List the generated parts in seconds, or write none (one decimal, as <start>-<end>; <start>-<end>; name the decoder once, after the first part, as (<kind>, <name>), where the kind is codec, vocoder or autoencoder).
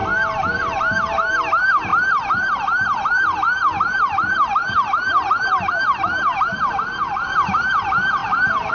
0.0-1.4 (vocoder, BigVGAN v2); 1.9-5.7; 8.2-8.7